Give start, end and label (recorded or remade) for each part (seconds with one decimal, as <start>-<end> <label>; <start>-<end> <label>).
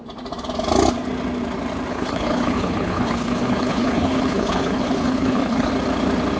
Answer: 0.0-1.9 recorded; 1.9-5.7 remade; 5.7-6.4 recorded